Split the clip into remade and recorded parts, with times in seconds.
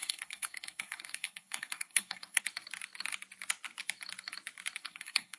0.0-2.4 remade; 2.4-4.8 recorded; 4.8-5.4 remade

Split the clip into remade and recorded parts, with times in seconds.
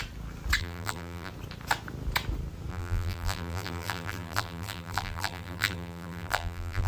0.0-0.6 recorded; 0.6-1.3 remade; 1.3-2.7 recorded; 2.7-6.9 remade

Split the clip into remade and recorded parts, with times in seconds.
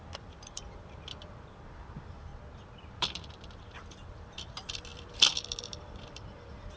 0.0-2.3 remade; 2.3-2.8 recorded; 2.8-6.8 remade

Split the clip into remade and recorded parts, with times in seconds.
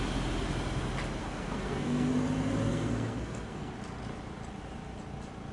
0.0-1.2 recorded; 1.2-2.1 remade; 2.1-2.7 recorded; 2.7-3.7 remade; 3.7-5.5 recorded